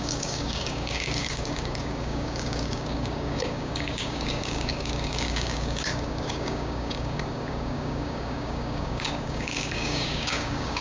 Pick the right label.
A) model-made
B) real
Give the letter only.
A